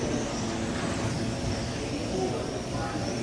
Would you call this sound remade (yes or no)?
no